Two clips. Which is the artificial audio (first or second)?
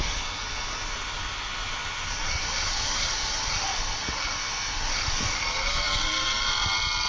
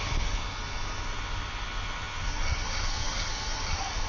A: first